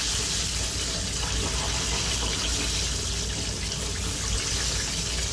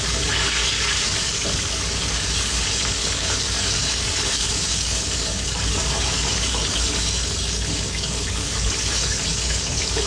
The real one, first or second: first